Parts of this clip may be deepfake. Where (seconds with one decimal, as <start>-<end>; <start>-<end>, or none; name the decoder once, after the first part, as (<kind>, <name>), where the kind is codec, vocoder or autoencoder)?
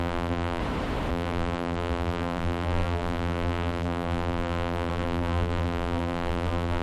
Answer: 0.0-0.6 (vocoder, BigVGAN v2); 1.1-6.8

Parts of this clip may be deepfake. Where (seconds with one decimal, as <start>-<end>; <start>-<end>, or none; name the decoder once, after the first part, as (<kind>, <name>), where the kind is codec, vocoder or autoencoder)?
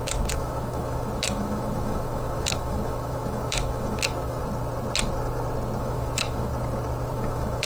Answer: 0.0-4.4 (autoencoder, DAC-VAE); 5.8-6.5; 7.1-7.6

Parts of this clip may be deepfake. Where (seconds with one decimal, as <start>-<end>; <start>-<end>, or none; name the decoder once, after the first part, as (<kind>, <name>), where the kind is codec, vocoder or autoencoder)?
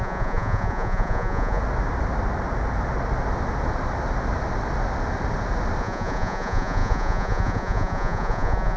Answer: 0.0-1.6 (vocoder, Vocos); 5.8-8.8